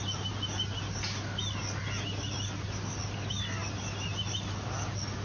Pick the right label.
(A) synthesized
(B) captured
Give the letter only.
B